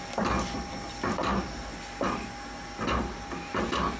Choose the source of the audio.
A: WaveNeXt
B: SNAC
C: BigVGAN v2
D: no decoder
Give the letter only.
D